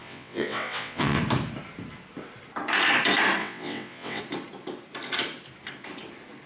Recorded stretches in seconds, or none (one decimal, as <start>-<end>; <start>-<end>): 1.2-3.4; 4.2-6.5

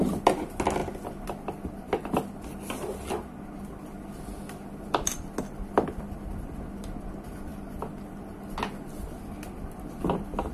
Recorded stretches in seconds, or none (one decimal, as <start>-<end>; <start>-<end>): 0.0-10.5

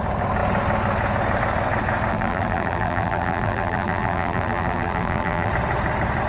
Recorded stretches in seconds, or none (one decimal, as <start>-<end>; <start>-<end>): 0.0-2.1; 5.5-6.3